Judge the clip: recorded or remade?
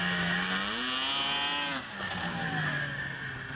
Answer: recorded